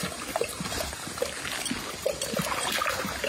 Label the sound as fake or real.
fake